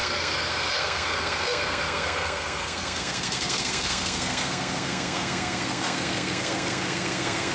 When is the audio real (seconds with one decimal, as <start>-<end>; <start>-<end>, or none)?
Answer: none